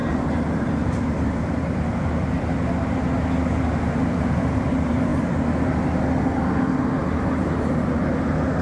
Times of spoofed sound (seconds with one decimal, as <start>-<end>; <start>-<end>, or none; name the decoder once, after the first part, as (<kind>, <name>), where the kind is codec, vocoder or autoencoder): 0.0-1.4 (vocoder, BigVGAN v2)